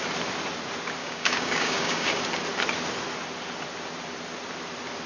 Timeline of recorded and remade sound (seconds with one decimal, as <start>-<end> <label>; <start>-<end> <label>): 0.0-1.0 recorded; 1.0-2.2 remade; 2.2-5.1 recorded